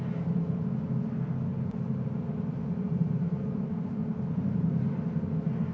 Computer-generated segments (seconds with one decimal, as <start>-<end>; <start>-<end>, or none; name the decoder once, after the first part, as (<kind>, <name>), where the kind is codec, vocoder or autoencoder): 1.5-4.9 (vocoder, BigVGAN v2)

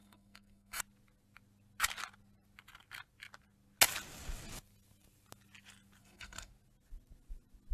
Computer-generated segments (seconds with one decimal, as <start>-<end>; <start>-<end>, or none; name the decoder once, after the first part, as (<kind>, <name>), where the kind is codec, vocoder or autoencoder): 0.0-0.8 (codec, SNAC); 6.0-6.5